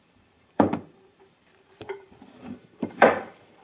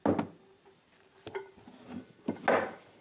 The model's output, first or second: first